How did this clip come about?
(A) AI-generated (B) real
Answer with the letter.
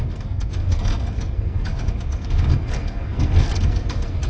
A